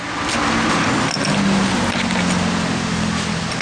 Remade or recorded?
recorded